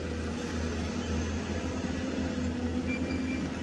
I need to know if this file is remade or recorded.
recorded